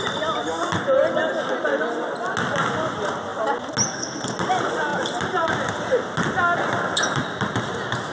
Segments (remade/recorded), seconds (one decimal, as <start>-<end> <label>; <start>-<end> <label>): 0.0-8.1 recorded